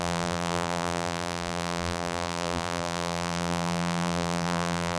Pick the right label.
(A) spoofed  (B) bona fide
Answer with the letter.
A